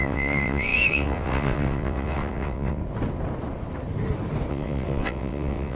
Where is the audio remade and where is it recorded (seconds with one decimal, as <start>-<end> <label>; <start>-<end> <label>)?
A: 0.0-2.8 remade; 2.8-4.5 recorded; 4.5-5.8 remade